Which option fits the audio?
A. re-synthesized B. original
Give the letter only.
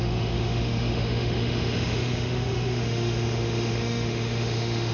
A